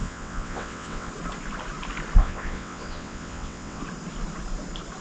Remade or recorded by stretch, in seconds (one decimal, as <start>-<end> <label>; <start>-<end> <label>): 0.0-1.1 remade; 1.1-2.2 recorded; 2.2-3.8 remade; 3.8-5.0 recorded